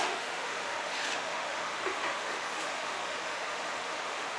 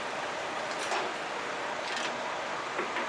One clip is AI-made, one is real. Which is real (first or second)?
second